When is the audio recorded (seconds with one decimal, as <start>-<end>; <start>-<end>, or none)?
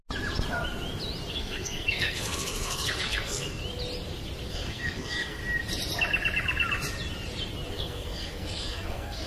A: 0.0-1.3; 3.6-4.5; 5.4-7.7